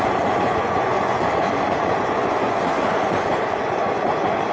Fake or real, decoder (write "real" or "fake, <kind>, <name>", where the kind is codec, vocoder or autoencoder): fake, vocoder, Vocos